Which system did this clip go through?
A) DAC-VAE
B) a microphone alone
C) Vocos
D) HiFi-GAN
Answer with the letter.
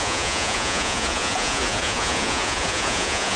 C